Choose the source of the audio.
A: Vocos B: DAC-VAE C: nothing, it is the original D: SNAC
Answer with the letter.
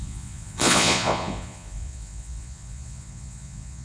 A